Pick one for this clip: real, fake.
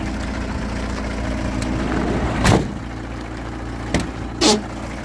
real